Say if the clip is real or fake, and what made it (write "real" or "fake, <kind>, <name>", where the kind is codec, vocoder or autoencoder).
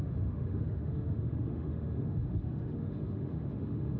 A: fake, autoencoder, DAC-VAE